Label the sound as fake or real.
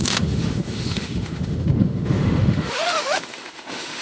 fake